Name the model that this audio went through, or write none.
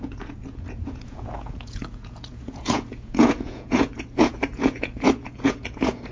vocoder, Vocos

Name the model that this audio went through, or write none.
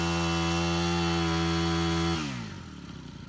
none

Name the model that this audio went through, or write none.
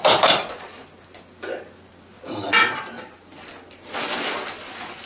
none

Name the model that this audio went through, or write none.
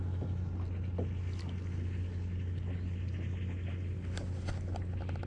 none